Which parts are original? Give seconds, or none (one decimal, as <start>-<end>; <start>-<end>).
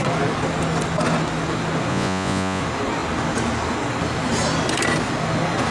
0.0-1.9; 2.6-5.7